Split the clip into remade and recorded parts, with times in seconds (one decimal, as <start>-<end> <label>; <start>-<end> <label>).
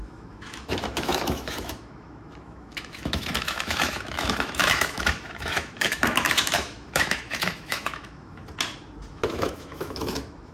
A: 0.0-8.4 remade; 8.4-9.1 recorded; 9.1-10.5 remade